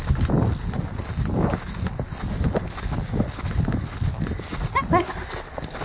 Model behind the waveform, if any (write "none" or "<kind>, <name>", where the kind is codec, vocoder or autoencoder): none